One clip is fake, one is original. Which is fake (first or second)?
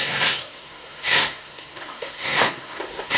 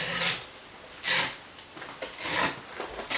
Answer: first